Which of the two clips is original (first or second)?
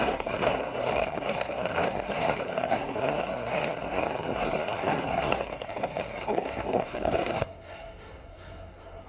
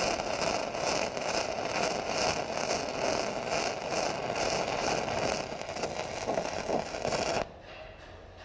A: second